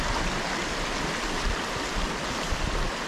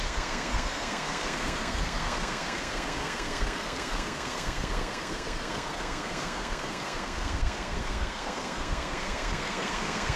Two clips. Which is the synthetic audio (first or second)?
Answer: second